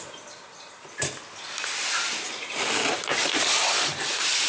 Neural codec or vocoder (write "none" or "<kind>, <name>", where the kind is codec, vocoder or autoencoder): none